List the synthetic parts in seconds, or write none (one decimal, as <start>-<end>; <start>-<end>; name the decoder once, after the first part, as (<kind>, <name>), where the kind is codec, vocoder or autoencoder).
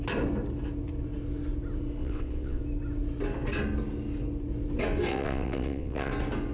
2.0-2.6 (vocoder, WaveNeXt); 5.1-6.1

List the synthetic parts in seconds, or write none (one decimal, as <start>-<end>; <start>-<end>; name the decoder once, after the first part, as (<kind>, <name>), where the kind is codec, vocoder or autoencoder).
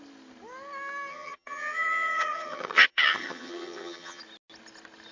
1.1-4.2 (vocoder, HiFi-GAN)